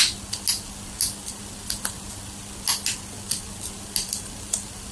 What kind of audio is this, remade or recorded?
recorded